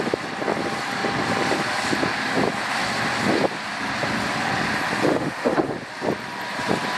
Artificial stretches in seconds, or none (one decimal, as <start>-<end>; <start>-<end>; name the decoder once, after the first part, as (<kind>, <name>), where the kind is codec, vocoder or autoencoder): 5.1-5.9 (autoencoder, DAC-VAE)